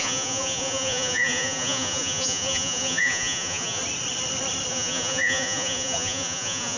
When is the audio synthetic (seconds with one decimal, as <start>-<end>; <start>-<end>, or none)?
0.0-3.8; 4.7-6.8